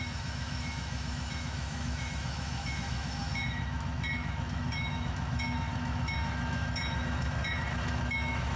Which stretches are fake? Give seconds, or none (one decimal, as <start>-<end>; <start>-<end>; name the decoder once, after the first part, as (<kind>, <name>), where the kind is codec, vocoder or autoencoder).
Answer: 0.0-8.6 (autoencoder, DAC-VAE)